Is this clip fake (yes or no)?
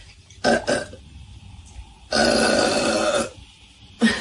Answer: no